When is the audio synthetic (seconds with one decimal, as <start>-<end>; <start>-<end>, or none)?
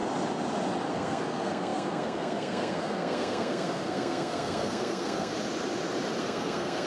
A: 0.9-5.3; 6.2-6.9